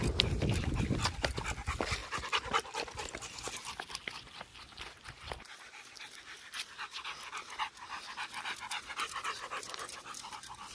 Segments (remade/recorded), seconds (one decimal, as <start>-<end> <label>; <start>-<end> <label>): 0.0-10.7 recorded